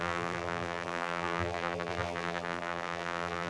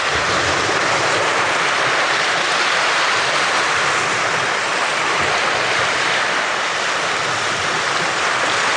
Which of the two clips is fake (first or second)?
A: first